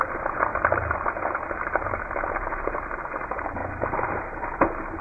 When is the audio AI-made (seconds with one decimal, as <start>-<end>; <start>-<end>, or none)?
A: 0.0-0.5; 1.6-5.0